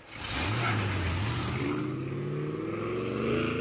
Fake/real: real